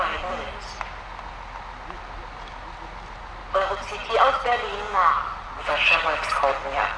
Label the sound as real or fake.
real